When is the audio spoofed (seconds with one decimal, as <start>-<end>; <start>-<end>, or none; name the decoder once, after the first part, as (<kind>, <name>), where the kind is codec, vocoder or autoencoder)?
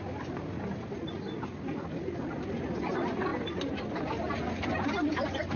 none